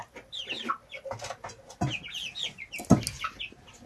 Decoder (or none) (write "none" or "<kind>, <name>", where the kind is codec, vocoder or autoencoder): none